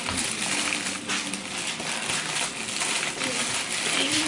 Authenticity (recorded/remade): recorded